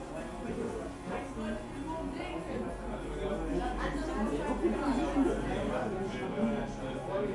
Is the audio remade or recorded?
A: recorded